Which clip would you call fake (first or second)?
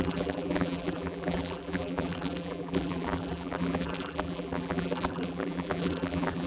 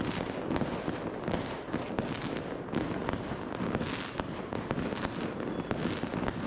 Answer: first